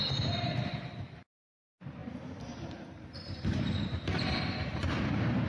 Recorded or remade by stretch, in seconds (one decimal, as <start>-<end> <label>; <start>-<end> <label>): 0.0-5.5 remade